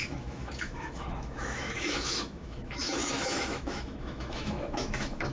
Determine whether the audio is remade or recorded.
remade